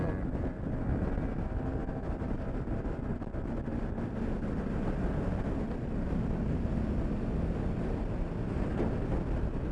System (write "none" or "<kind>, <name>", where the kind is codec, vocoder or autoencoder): none